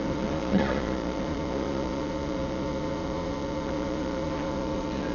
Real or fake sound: fake